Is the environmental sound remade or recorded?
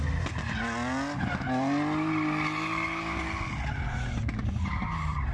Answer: recorded